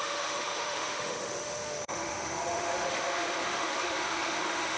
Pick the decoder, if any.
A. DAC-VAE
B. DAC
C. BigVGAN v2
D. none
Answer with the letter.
A